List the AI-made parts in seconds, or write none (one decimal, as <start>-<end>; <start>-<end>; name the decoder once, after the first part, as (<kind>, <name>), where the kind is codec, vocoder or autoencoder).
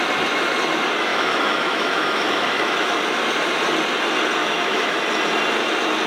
1.1-3.0 (autoencoder, DAC-VAE); 4.4-5.0